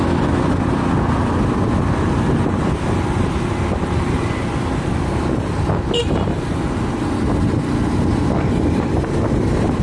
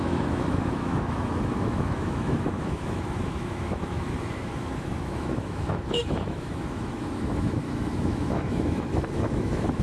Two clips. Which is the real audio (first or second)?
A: first